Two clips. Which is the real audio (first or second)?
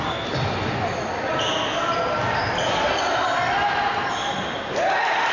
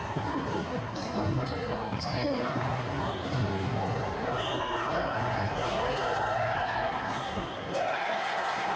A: first